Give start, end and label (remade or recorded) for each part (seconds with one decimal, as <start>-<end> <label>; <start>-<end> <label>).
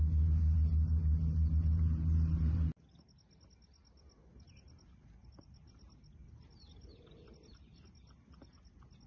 0.0-9.1 recorded